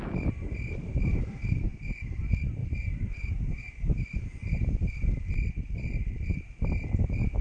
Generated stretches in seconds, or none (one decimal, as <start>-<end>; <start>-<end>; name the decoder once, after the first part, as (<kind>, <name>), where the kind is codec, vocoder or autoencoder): 2.6-3.2 (vocoder, BigVGAN v2); 4.4-6.6